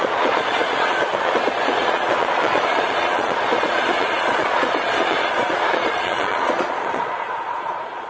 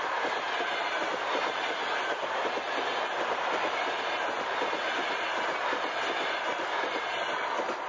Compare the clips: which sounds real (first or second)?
second